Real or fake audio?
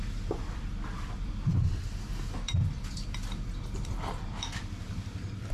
fake